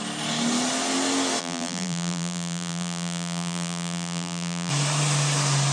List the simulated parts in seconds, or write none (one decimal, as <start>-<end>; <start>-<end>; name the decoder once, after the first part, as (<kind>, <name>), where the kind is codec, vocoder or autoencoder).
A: 1.4-4.7 (vocoder, BigVGAN v2)